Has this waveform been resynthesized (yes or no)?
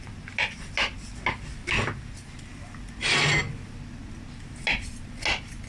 no